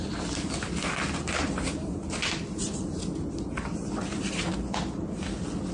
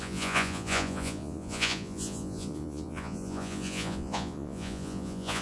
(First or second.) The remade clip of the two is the second